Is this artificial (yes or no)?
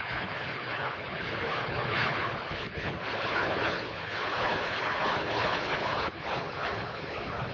yes